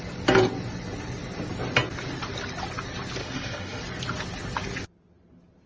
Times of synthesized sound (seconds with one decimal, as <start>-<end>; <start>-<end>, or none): 3.2-3.8